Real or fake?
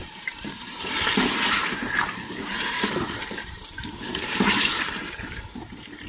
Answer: fake